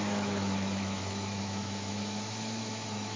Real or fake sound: fake